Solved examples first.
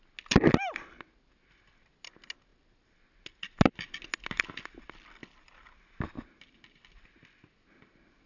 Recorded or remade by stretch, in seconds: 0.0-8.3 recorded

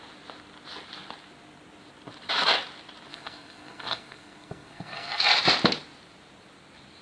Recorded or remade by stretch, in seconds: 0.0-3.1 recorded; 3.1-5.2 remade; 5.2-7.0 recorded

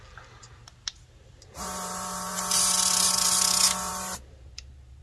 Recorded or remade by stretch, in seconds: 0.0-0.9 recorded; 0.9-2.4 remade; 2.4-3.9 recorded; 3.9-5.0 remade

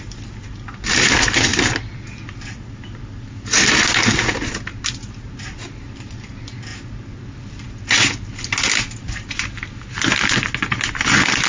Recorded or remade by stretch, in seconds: 0.0-11.5 recorded

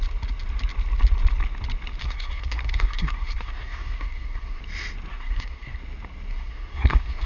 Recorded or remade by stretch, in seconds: 0.0-2.0 recorded; 2.0-4.6 remade; 4.6-5.1 recorded; 5.1-5.8 remade; 5.8-6.3 recorded; 6.3-7.3 remade

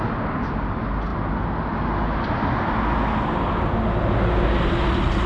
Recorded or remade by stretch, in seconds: 0.0-5.3 recorded

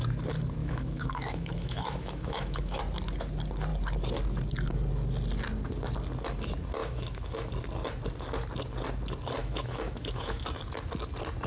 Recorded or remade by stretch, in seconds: 0.0-0.6 recorded; 0.6-2.8 remade; 2.8-6.8 recorded; 6.8-7.5 remade; 7.5-9.4 recorded; 9.4-10.5 remade; 10.5-11.5 recorded

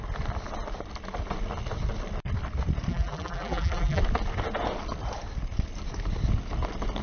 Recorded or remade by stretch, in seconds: 0.0-2.9 recorded; 2.9-4.0 remade; 4.0-7.0 recorded